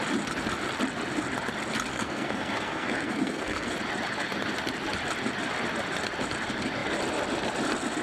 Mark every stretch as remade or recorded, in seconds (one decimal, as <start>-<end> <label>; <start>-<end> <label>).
0.0-1.9 recorded; 1.9-3.7 remade; 3.7-8.0 recorded